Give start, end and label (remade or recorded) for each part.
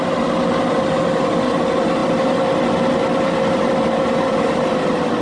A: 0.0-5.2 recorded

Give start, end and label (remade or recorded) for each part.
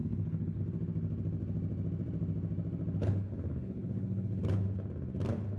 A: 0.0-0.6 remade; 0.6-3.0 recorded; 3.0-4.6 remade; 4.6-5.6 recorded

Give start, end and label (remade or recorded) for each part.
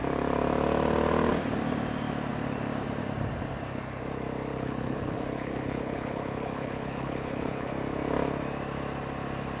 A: 0.0-4.5 recorded; 4.5-7.7 remade; 7.7-9.6 recorded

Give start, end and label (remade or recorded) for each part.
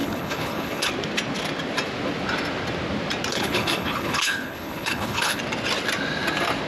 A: 0.0-0.9 remade; 0.9-3.3 recorded; 3.3-5.4 remade; 5.4-6.7 recorded